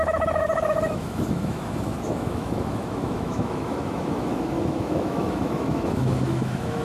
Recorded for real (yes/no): no